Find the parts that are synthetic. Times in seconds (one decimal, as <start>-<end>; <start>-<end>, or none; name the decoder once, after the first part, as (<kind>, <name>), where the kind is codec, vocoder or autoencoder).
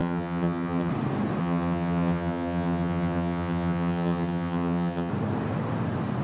0.0-0.9 (vocoder, HiFi-GAN); 1.4-5.1